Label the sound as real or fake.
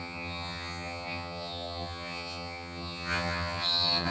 fake